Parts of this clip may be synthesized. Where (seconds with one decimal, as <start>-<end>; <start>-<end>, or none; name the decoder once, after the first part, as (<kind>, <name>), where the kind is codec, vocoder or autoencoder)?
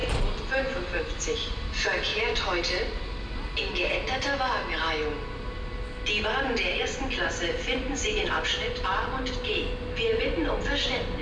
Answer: none